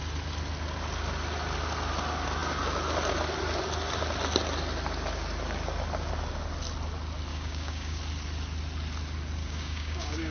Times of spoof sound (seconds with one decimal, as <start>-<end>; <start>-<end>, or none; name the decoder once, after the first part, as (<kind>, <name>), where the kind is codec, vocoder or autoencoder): 7.3-8.0 (codec, DAC); 9.4-10.3